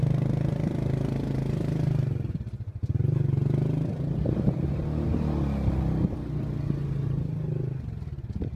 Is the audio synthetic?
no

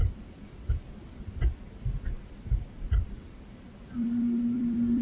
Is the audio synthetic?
yes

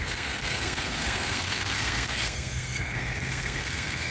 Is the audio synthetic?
yes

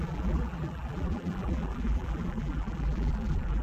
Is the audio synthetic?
yes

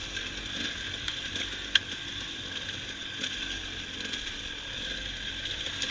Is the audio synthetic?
no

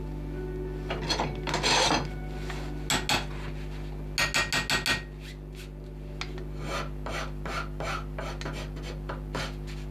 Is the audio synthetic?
no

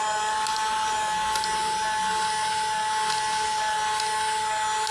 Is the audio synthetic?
no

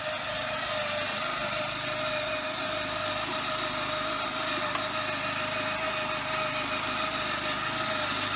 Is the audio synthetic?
no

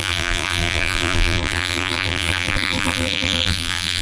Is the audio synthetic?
yes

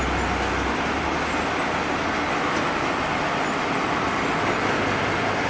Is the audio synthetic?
no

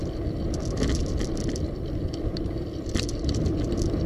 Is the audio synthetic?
no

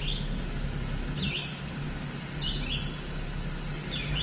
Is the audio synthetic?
no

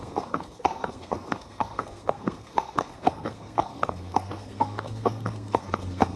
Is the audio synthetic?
yes